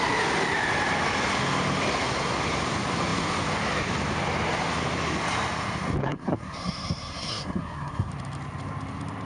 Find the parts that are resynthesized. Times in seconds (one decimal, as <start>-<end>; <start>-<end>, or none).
6.0-8.1